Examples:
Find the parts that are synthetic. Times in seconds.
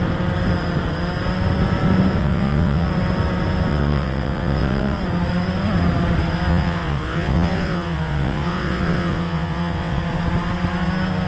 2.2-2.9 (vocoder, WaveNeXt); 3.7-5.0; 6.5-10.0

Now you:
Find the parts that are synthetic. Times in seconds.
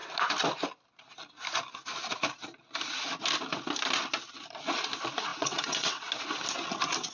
5.3-6.0 (vocoder, WaveNeXt)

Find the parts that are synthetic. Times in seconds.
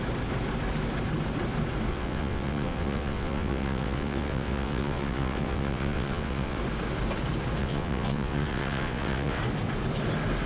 1.9-6.6 (vocoder, WaveNeXt); 7.6-9.4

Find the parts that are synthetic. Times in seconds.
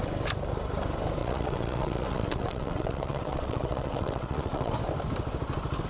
1.2-4.7 (vocoder, WaveNeXt)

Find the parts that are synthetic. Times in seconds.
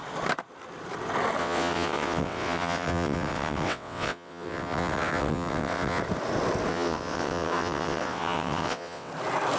1.4-6.0 (vocoder, WaveNeXt); 6.7-9.1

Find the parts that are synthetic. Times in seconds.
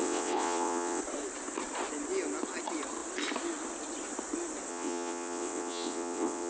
0.0-1.0 (vocoder, WaveNeXt); 4.7-6.5